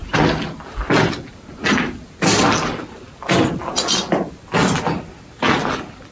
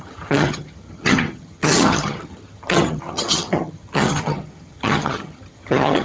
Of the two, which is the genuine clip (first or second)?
first